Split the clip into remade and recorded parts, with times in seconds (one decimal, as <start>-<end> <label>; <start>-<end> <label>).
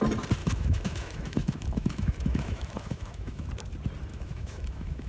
0.0-0.4 recorded; 0.4-3.5 remade; 3.5-4.1 recorded; 4.1-5.1 remade